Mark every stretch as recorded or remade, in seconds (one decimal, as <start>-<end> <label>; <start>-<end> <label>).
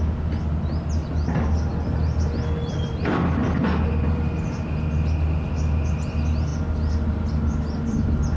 0.0-8.4 recorded